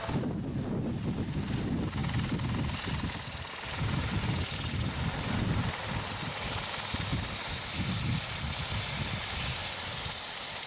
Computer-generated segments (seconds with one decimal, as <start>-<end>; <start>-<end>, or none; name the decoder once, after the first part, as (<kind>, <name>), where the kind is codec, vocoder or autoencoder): none